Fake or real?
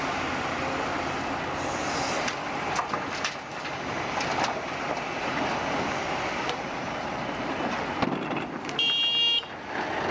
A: real